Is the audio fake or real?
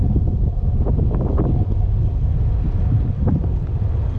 real